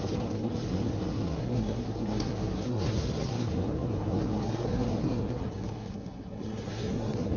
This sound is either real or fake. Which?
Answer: fake